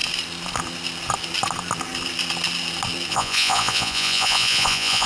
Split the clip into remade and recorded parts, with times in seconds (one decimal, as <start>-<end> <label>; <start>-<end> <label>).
0.0-3.1 recorded; 3.1-5.1 remade